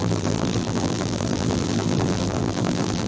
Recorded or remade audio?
remade